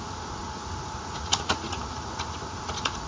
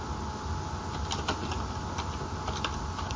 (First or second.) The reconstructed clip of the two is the first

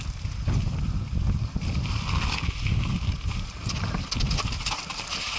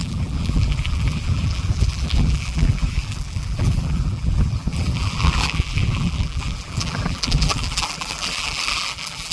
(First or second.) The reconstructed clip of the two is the second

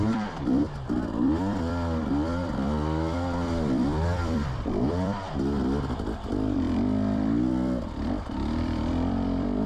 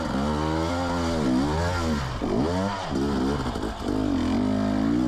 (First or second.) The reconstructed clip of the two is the first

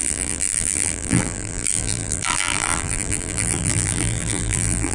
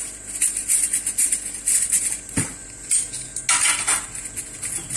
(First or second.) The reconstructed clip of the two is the first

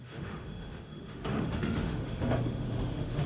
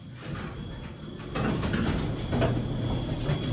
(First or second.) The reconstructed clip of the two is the first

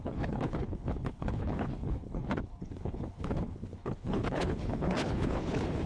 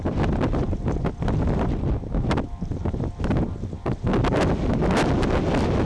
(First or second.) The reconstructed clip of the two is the first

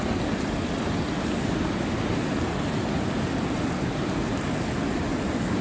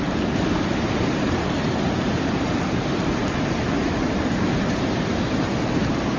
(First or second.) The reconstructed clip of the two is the second